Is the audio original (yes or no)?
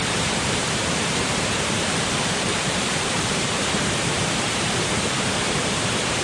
no